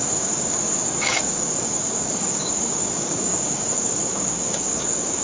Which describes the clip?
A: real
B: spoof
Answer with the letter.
B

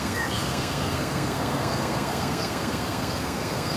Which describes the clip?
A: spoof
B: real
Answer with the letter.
A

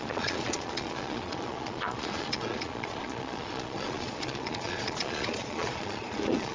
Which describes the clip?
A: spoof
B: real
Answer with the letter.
A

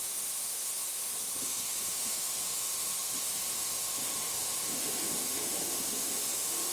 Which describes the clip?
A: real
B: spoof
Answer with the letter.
B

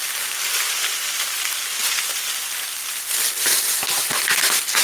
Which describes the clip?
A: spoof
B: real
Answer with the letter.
A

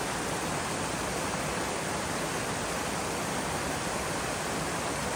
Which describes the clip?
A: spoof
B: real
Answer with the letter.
B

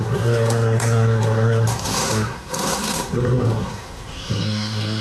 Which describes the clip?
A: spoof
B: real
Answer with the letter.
A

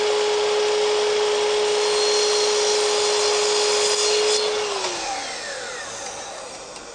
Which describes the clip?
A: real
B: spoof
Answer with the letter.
A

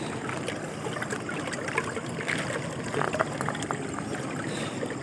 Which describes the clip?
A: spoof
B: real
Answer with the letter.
B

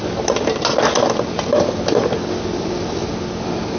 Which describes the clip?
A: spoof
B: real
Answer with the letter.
B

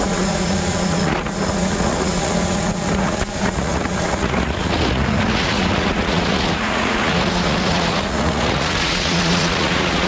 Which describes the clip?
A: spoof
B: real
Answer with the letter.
A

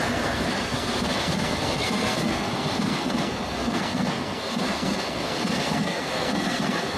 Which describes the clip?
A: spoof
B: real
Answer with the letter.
A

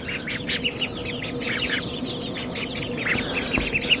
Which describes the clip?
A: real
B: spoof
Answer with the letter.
A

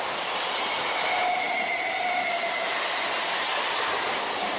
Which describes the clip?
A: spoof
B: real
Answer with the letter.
B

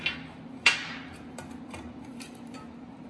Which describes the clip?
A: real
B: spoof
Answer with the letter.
A